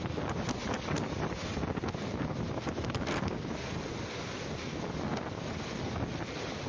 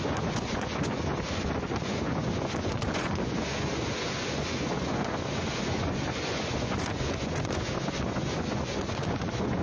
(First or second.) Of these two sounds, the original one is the first